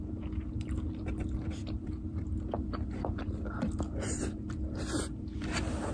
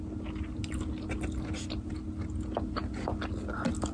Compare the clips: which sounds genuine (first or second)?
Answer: second